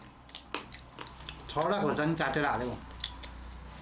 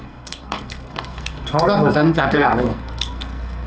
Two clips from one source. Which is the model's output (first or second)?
second